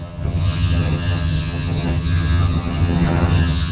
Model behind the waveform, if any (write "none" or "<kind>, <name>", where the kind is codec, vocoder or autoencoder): vocoder, HiFi-GAN